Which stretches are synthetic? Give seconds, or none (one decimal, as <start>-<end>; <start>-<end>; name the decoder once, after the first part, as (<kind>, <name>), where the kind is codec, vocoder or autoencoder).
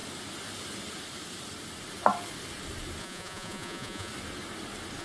3.0-4.1 (vocoder, Vocos)